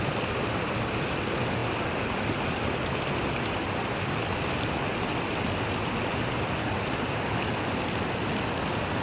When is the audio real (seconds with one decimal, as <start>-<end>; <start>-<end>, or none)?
0.0-9.0